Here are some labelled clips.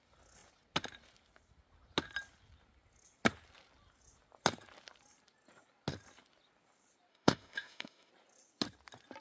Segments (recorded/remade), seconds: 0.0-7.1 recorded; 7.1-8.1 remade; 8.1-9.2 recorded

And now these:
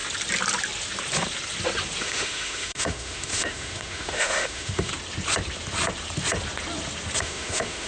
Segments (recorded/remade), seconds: 0.0-2.0 recorded; 2.0-4.9 remade; 4.9-7.2 recorded; 7.2-7.9 remade

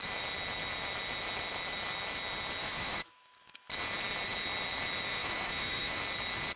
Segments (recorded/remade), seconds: 0.0-2.6 recorded; 2.6-3.7 remade; 3.7-5.2 recorded; 5.2-6.0 remade; 6.0-6.6 recorded

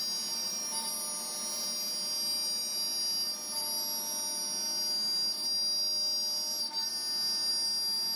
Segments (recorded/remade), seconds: 0.0-8.2 recorded

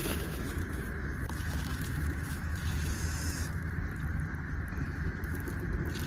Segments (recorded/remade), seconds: 0.0-3.7 remade; 3.7-4.8 recorded; 4.8-5.5 remade; 5.5-6.1 recorded

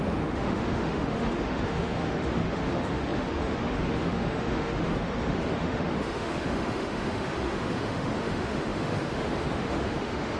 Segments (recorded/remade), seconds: 0.0-10.4 remade